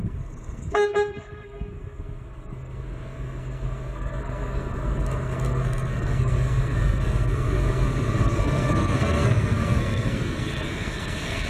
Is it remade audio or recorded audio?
remade